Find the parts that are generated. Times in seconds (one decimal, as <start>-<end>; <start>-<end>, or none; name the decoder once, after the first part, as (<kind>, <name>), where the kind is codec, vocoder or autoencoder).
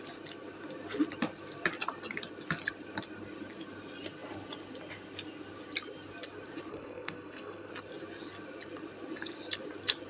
6.7-7.7 (codec, SNAC)